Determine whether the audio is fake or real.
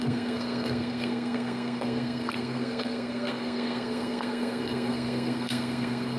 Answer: fake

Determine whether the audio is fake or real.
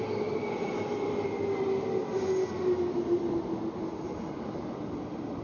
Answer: real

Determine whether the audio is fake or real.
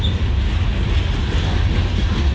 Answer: real